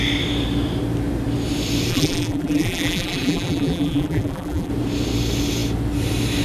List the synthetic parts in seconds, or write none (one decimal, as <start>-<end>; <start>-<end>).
1.9-4.7